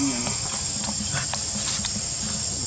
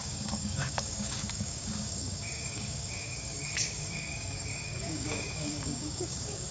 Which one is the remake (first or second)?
second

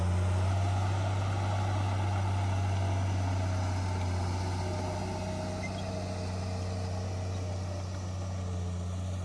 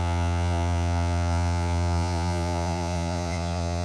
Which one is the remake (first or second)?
second